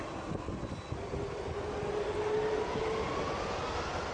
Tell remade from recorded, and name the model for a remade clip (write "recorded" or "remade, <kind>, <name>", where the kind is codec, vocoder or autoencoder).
recorded